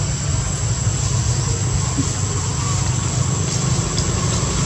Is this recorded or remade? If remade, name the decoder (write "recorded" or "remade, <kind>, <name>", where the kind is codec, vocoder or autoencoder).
recorded